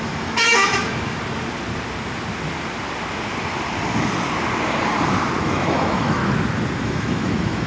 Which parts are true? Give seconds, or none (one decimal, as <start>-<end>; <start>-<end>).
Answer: 0.8-5.4; 6.2-6.8